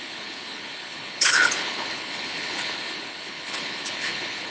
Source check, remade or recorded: remade